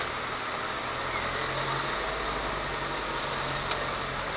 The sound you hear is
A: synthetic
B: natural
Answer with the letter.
B